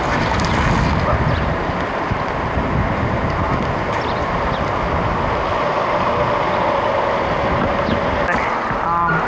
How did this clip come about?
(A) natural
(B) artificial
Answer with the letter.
A